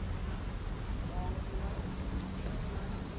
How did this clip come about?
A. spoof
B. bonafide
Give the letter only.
B